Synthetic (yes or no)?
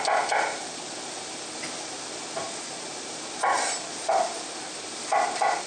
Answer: no